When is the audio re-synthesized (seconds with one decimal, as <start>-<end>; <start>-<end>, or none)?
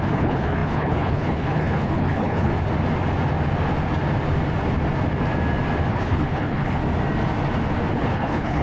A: 0.0-2.5; 5.9-6.8; 7.9-8.6